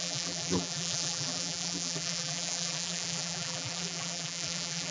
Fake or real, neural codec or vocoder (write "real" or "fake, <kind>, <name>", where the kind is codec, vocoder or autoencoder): fake, vocoder, BigVGAN v2